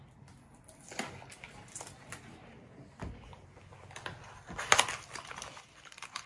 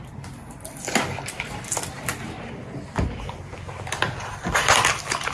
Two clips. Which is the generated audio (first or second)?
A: second